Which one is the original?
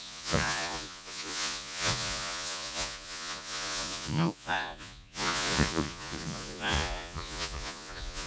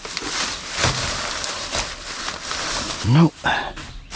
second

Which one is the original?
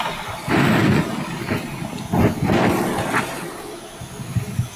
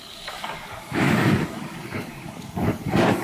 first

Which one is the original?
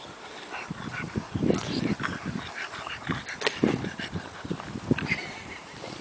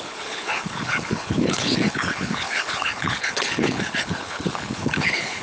first